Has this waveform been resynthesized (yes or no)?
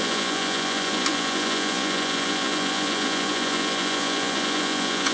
yes